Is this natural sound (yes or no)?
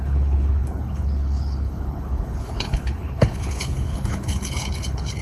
no